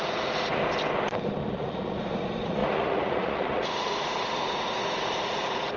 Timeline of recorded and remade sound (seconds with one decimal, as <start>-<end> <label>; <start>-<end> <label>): 0.0-0.6 remade; 0.6-1.4 recorded; 1.4-5.8 remade